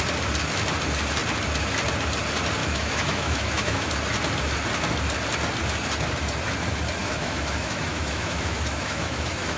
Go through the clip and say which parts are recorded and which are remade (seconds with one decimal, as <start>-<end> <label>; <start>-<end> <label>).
0.0-2.6 recorded; 2.6-3.9 remade; 3.9-7.0 recorded; 7.0-9.6 remade